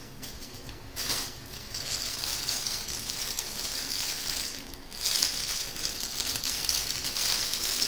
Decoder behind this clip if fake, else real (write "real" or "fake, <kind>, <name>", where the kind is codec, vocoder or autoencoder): fake, codec, SNAC